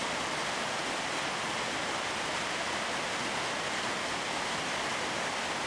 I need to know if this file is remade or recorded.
recorded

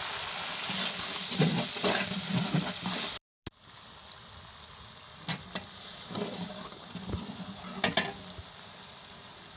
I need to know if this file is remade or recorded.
recorded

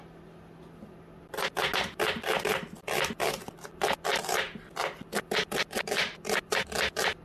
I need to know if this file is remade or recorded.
recorded